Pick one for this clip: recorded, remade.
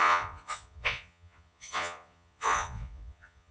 remade